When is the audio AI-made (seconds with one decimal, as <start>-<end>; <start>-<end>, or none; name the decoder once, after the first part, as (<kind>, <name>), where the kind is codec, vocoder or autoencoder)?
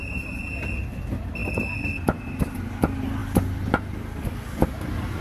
none